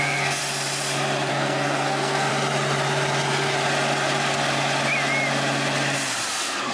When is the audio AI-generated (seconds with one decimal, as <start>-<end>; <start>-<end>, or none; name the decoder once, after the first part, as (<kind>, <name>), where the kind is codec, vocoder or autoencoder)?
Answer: 0.0-0.4 (codec, SNAC); 1.3-2.3; 6.3-6.7